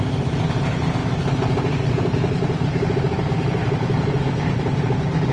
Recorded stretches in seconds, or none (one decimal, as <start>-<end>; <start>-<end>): 0.0-1.0; 4.2-5.3